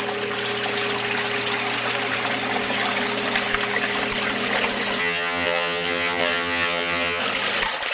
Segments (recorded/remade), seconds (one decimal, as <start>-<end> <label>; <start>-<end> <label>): 0.0-5.0 recorded; 5.0-7.2 remade; 7.2-7.9 recorded